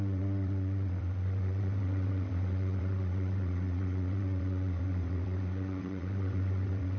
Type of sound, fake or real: fake